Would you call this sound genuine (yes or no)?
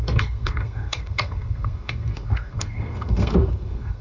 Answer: no